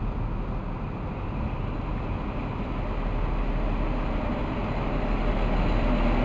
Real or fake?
real